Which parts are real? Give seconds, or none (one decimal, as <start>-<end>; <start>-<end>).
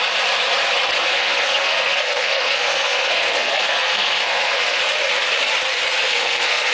0.0-1.1; 4.8-6.1